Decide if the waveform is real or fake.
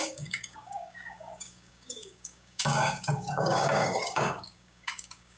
fake